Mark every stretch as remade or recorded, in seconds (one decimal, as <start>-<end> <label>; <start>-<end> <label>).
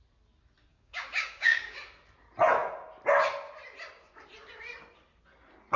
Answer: 0.0-0.7 recorded; 0.7-1.8 remade; 1.8-5.8 recorded